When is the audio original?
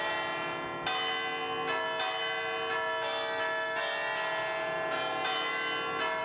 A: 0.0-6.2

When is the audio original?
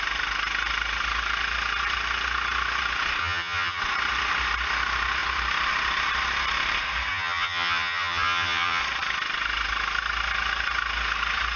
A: 0.0-3.2; 3.8-7.1; 8.8-11.6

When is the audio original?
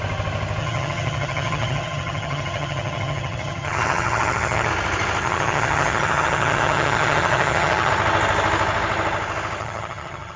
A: 0.0-0.6; 4.7-5.2; 7.9-9.6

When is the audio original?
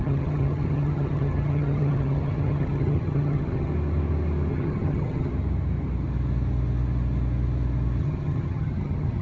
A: 3.7-4.5; 5.3-8.0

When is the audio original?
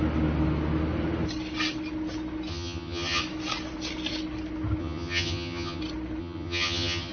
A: 0.0-2.5; 3.2-4.8; 5.8-6.2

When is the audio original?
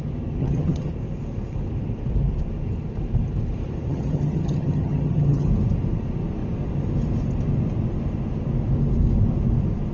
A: 0.0-0.4; 0.9-3.9; 5.5-9.9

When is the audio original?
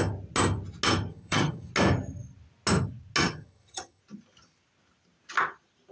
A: 0.0-1.1; 1.7-3.2; 4.0-5.9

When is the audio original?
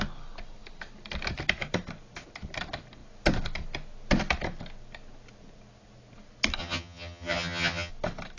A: 0.0-6.6; 7.9-8.4